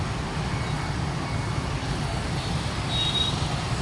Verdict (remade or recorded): recorded